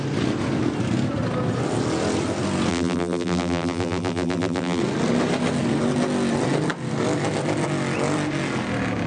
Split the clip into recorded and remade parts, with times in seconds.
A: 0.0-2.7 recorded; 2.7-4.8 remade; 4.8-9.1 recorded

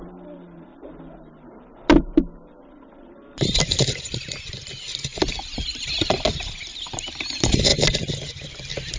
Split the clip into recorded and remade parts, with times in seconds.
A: 0.0-5.1 recorded; 5.1-5.8 remade; 5.8-9.0 recorded

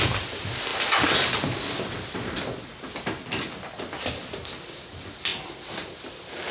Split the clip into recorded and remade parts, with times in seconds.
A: 0.0-6.5 recorded